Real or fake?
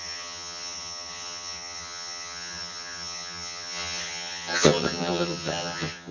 fake